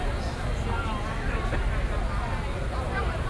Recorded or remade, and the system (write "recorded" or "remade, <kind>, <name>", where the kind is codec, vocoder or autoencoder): recorded